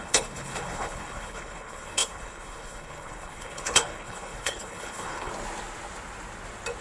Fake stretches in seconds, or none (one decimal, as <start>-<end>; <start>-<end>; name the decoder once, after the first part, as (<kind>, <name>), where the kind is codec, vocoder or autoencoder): 0.0-5.3 (codec, HILCodec)